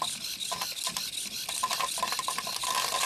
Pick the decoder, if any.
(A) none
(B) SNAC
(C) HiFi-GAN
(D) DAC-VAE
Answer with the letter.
A